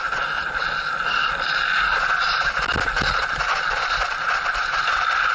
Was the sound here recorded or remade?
recorded